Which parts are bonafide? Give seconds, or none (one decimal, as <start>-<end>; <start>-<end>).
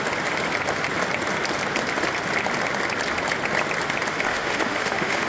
0.0-4.3